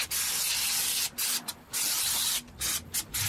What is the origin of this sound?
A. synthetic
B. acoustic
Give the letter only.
B